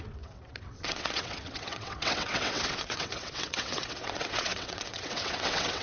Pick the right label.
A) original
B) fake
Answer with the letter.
B